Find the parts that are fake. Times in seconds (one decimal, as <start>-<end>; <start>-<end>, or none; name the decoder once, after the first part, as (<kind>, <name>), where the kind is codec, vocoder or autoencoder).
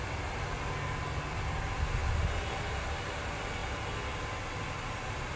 none